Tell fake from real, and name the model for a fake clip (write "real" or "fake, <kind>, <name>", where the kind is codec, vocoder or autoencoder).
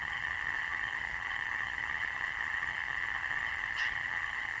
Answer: fake, vocoder, HiFi-GAN